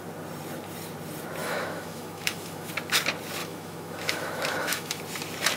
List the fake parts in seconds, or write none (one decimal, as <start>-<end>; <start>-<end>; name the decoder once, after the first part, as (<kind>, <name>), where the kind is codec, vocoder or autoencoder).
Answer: 1.4-2.7 (autoencoder, DAC-VAE); 3.4-5.0